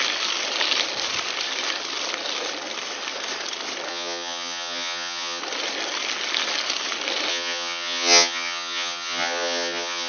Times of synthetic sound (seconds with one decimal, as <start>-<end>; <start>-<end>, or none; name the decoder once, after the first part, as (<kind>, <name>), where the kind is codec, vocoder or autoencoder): 3.9-5.4 (vocoder, HiFi-GAN); 7.3-10.1